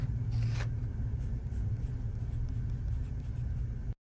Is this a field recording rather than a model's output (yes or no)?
yes